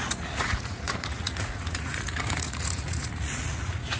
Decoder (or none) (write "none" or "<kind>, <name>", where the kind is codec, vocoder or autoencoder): vocoder, Vocos